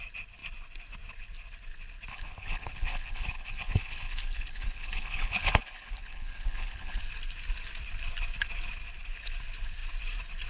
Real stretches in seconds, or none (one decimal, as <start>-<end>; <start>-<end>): 0.0-2.1; 7.0-10.5